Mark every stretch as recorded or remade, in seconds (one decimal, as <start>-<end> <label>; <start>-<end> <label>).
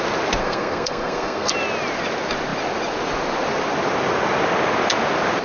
0.0-0.4 recorded; 0.4-1.5 remade; 1.5-5.4 recorded